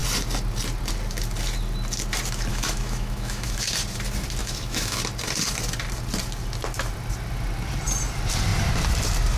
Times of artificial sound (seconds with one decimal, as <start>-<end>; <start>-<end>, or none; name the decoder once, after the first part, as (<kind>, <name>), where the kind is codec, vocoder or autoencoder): 2.5-3.7 (autoencoder, DAC-VAE); 4.4-5.0